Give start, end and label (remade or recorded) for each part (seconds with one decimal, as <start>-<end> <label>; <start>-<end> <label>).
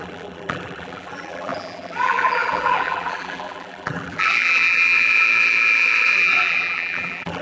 0.0-7.4 remade